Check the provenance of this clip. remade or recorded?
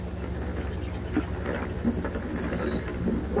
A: recorded